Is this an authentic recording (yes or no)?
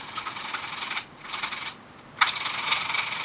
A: yes